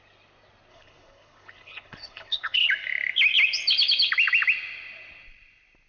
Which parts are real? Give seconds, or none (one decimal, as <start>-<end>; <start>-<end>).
0.0-0.7; 2.7-5.9